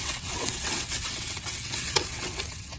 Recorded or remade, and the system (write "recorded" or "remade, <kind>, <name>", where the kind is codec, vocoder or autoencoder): remade, vocoder, WaveNeXt